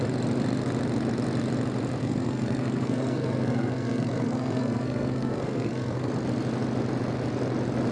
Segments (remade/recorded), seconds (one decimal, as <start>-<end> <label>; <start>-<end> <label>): 0.0-2.0 recorded; 2.0-6.1 remade; 6.1-7.9 recorded